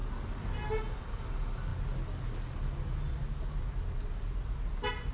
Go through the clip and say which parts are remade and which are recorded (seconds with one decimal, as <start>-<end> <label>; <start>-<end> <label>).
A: 0.0-5.1 recorded